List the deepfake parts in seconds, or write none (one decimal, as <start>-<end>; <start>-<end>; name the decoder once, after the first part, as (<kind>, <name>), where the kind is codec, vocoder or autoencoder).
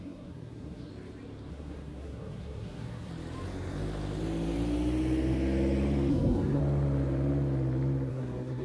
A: 0.0-0.9 (codec, SNAC); 1.5-3.1; 6.1-6.6; 8.1-8.6